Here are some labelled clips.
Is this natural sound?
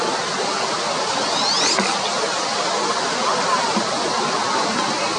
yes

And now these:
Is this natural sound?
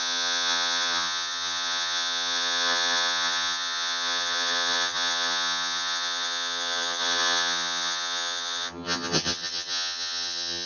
no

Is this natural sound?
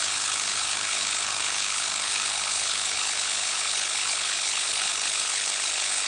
no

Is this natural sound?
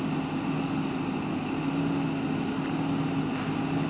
yes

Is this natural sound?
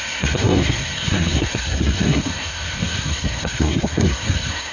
no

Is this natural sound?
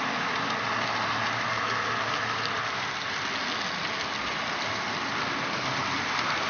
yes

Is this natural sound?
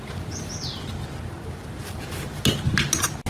yes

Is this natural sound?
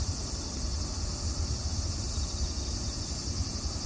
yes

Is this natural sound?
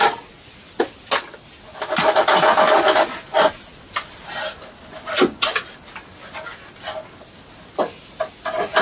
yes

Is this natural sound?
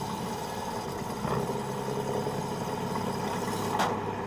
yes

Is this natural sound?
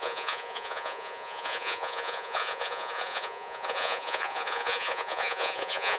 no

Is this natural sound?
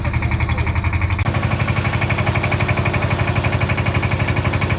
yes